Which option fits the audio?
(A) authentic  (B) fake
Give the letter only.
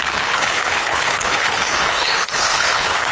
B